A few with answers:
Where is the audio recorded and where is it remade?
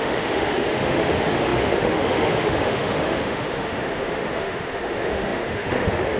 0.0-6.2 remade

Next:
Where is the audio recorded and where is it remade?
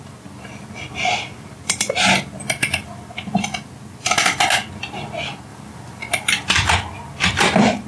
0.0-7.9 recorded